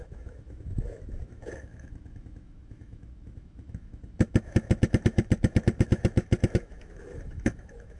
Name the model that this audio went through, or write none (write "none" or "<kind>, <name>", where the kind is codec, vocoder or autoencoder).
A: autoencoder, DAC-VAE